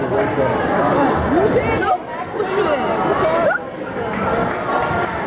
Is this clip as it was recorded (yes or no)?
yes